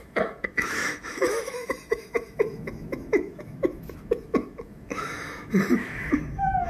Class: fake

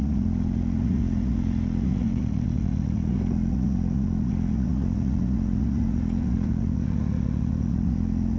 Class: fake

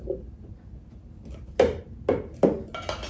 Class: real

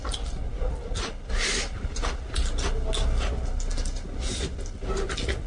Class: real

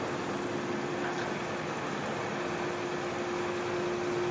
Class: real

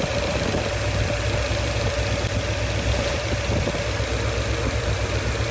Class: real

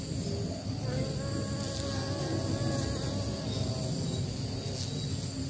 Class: real